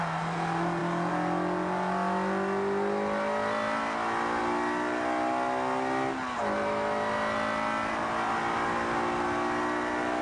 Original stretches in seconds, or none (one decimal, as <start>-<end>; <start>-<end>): 0.0-10.2